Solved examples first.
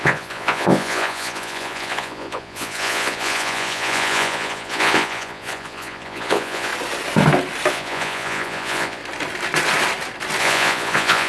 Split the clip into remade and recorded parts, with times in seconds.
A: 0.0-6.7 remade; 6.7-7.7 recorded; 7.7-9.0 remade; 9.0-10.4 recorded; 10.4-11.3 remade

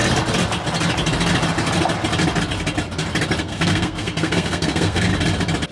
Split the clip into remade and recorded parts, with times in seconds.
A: 0.0-3.4 recorded; 3.4-5.1 remade; 5.1-5.7 recorded

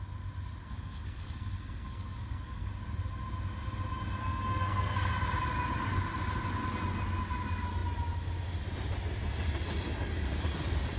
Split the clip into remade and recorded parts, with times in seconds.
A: 0.0-0.6 recorded; 0.6-2.7 remade; 2.7-4.2 recorded; 4.2-5.1 remade; 5.1-11.0 recorded